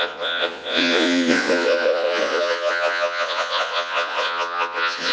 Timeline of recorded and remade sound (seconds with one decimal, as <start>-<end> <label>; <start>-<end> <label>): 0.0-5.1 remade